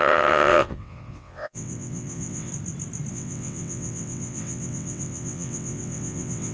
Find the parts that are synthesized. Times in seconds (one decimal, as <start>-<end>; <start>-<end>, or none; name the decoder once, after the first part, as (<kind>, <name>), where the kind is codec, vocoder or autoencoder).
0.0-2.5 (vocoder, WaveNeXt); 3.1-6.5